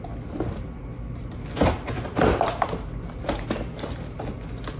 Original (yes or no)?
yes